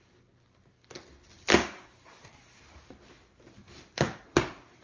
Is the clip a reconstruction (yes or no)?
no